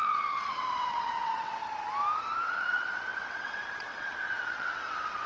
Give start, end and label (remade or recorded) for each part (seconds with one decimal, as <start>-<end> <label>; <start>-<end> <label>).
0.0-1.6 remade; 1.6-2.4 recorded; 2.4-5.3 remade